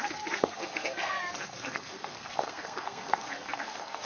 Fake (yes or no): yes